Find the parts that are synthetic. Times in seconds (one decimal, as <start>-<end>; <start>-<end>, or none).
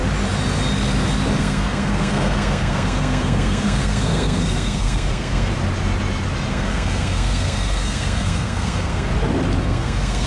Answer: 1.4-5.5; 6.5-9.1; 9.6-10.3